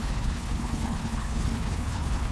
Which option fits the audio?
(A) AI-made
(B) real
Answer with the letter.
A